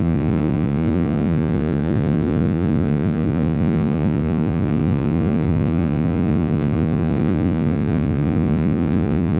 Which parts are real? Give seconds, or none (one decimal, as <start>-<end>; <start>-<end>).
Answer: none

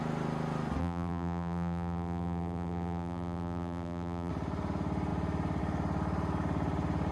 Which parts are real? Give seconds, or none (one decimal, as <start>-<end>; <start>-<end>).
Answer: 0.0-0.8; 4.3-7.1

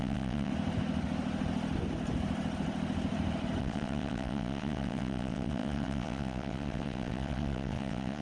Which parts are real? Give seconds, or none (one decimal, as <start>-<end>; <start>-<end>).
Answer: 0.5-3.6

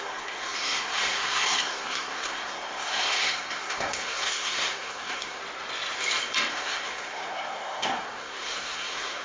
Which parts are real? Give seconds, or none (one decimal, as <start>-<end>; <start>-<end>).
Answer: 5.4-6.5